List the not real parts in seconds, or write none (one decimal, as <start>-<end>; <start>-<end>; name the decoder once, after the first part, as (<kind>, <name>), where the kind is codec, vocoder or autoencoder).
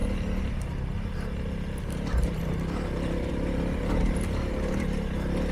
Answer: none